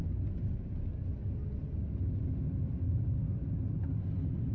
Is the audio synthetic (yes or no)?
no